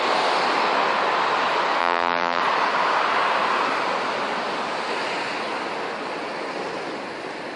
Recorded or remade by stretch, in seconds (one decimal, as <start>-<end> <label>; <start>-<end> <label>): 0.0-1.8 recorded; 1.8-2.4 remade; 2.4-7.6 recorded